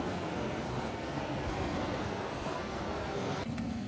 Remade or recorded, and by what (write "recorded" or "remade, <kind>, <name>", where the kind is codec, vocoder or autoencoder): remade, codec, SNAC